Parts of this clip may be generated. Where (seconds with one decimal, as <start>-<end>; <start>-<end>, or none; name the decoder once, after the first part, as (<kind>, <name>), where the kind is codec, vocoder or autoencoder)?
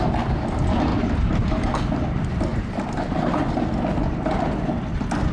0.9-1.4 (vocoder, BigVGAN v2); 2.5-3.2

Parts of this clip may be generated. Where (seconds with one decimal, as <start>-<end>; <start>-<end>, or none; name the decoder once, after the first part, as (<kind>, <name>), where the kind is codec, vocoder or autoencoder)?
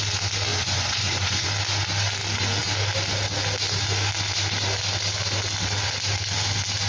0.5-1.5 (vocoder, Vocos)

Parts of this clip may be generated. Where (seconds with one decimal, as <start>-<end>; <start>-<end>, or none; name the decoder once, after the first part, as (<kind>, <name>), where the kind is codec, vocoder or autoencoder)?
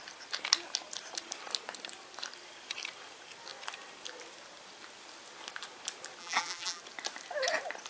6.2-6.8 (vocoder, BigVGAN v2)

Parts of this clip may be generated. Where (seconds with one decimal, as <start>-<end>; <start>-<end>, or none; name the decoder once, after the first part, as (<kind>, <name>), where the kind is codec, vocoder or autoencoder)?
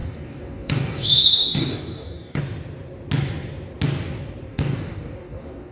0.0-2.4 (codec, DAC); 4.5-5.7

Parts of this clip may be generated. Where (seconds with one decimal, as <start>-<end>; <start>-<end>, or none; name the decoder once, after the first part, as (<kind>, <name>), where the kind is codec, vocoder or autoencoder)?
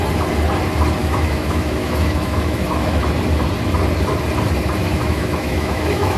1.0-3.0 (autoencoder, DAC-VAE); 4.8-6.2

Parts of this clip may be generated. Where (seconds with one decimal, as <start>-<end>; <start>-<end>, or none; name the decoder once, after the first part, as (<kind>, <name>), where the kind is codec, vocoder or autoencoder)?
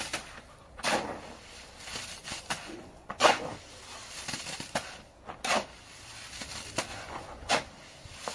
2.2-3.5 (vocoder, Vocos); 6.9-7.5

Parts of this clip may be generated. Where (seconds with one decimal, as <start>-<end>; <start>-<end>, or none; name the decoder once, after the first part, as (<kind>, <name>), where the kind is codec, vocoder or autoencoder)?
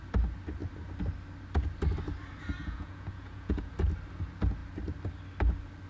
2.6-3.7 (vocoder, Vocos)